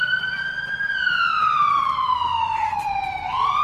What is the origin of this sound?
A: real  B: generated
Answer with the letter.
A